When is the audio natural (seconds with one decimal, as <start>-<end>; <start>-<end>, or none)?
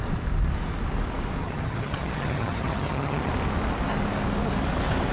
0.0-1.4; 3.3-5.1